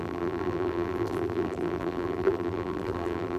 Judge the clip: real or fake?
fake